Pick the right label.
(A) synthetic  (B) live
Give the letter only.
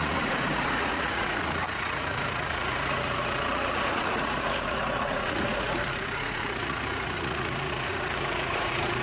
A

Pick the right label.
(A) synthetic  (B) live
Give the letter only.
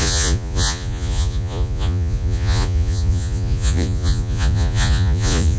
A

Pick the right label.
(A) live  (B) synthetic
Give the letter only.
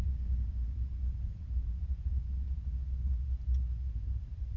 A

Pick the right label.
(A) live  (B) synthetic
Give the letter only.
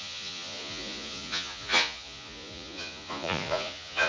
B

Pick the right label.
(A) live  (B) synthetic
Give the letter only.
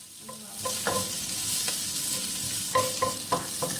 A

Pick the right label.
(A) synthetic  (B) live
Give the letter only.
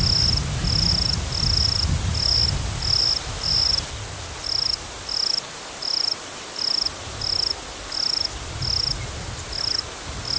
B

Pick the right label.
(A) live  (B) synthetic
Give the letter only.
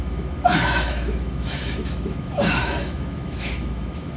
B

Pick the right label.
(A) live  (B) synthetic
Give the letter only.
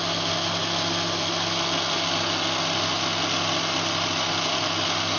A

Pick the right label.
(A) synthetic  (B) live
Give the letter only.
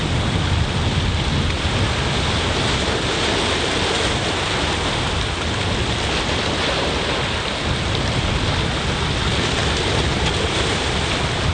B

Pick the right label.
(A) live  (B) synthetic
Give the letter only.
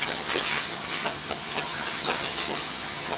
B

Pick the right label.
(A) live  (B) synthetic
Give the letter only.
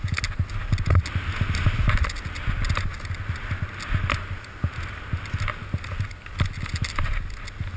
A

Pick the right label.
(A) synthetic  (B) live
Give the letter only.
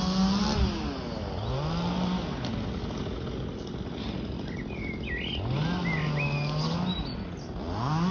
B